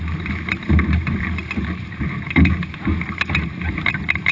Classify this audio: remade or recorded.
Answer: recorded